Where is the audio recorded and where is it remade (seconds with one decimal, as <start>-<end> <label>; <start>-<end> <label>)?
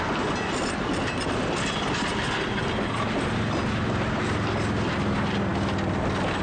0.0-6.4 recorded